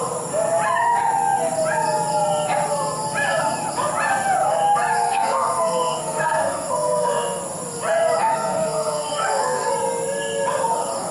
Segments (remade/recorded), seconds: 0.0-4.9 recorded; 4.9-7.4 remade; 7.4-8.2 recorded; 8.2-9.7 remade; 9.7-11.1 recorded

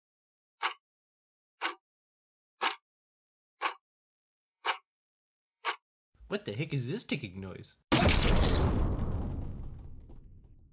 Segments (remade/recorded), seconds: 0.0-4.1 recorded; 4.1-5.7 remade; 5.7-10.7 recorded

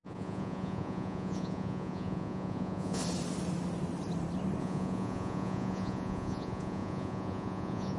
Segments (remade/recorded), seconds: 0.0-3.0 remade; 3.0-4.6 recorded; 4.6-8.0 remade

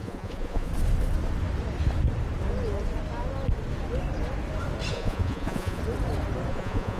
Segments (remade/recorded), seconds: 0.0-0.7 remade; 0.7-4.9 recorded; 4.9-5.8 remade; 5.8-6.5 recorded; 6.5-7.0 remade